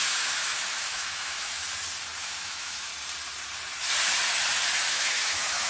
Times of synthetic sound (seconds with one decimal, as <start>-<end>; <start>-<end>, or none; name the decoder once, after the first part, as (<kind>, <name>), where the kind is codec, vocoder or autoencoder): 0.0-1.6 (autoencoder, DAC-VAE); 2.2-2.9; 4.9-5.7